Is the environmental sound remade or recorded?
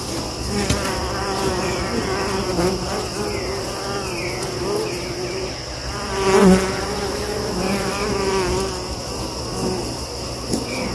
recorded